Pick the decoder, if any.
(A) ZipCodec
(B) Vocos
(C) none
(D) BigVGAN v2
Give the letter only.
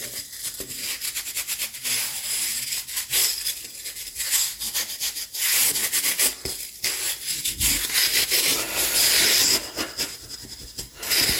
C